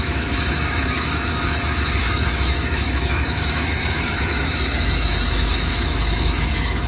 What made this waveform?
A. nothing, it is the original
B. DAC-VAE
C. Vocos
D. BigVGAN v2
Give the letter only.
B